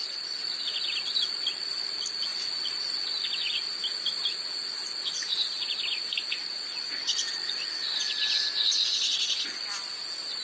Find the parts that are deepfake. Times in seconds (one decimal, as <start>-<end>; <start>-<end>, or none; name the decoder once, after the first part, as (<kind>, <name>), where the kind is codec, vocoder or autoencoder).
none